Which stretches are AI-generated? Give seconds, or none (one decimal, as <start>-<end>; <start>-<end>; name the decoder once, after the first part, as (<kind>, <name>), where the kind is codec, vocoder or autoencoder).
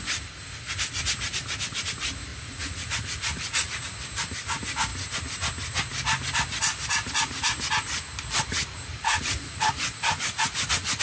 2.3-3.8 (vocoder, Vocos); 8.9-11.0